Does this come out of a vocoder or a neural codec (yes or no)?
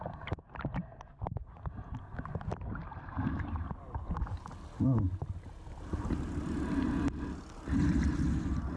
no